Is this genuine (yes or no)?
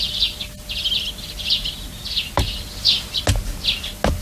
yes